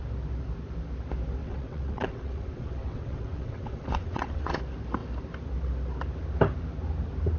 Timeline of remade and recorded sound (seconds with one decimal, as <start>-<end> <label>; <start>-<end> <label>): 0.0-1.4 recorded; 1.4-4.6 remade; 4.6-7.4 recorded